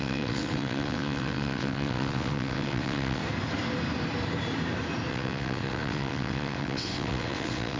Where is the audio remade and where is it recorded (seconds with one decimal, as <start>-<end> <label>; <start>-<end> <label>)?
0.0-3.2 remade; 3.2-5.1 recorded; 5.1-7.8 remade